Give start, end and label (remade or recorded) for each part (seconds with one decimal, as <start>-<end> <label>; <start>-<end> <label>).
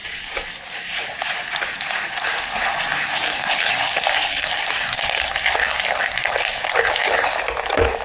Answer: 0.0-8.0 recorded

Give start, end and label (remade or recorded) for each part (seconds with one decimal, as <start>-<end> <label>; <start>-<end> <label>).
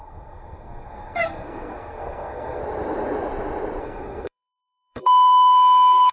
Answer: 0.0-2.6 remade; 2.6-3.8 recorded; 3.8-6.1 remade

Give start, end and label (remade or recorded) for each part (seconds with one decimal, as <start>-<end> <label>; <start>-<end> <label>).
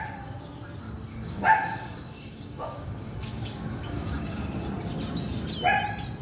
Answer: 0.0-1.1 recorded; 1.1-4.5 remade; 4.5-6.2 recorded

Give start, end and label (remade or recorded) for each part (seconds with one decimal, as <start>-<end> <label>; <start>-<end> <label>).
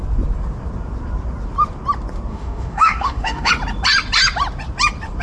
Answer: 0.0-2.3 recorded; 2.3-3.5 remade; 3.5-5.2 recorded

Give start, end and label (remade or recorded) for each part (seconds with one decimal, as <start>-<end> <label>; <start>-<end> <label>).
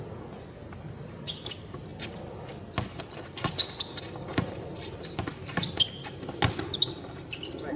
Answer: 0.0-7.8 recorded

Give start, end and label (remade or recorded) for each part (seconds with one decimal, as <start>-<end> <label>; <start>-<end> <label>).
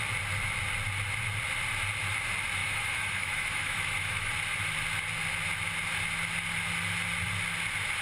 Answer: 0.0-2.6 recorded; 2.6-4.3 remade; 4.3-8.0 recorded